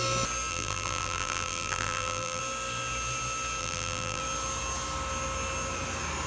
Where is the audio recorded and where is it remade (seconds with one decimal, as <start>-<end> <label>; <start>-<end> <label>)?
0.0-0.5 recorded; 0.5-2.4 remade; 2.4-3.6 recorded; 3.6-4.2 remade; 4.2-6.3 recorded